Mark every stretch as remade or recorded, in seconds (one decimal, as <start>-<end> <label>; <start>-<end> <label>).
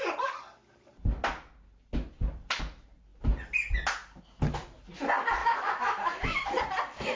0.0-5.4 recorded; 5.4-6.6 remade; 6.6-7.2 recorded